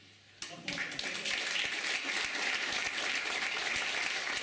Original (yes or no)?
yes